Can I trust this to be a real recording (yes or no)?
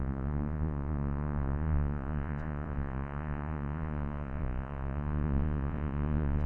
no